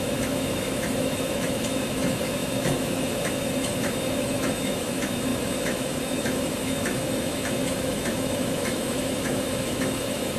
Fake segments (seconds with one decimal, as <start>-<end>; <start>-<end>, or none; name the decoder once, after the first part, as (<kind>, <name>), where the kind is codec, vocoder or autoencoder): 0.0-10.4 (autoencoder, DAC-VAE)